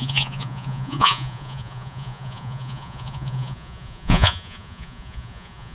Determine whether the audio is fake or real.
fake